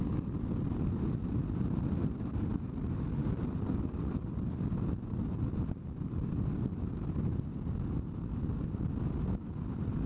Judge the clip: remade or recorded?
recorded